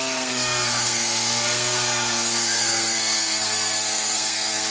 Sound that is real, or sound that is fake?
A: fake